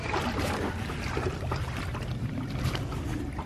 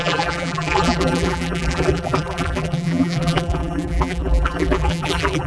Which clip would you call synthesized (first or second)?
second